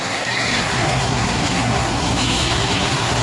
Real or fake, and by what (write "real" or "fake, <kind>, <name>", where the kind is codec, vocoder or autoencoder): fake, codec, SNAC